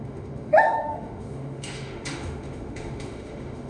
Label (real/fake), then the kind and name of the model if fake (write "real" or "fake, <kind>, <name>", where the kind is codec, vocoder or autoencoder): fake, autoencoder, DAC-VAE